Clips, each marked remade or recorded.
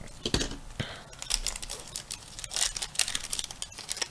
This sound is recorded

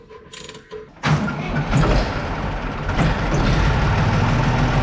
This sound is recorded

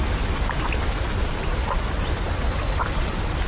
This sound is recorded